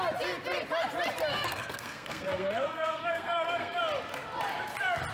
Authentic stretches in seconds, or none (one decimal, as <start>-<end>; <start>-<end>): 0.0-1.3; 3.8-5.1